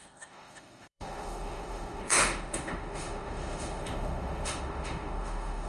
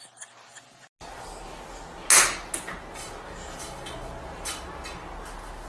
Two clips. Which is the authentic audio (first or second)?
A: second